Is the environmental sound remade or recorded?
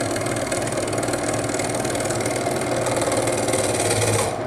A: recorded